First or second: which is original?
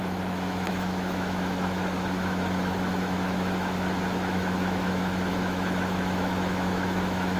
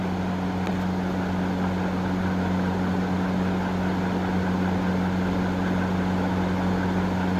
second